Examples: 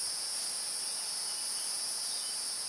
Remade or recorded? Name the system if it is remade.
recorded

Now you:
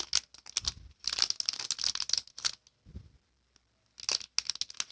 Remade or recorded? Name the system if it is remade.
recorded